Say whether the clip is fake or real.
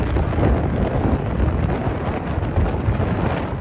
real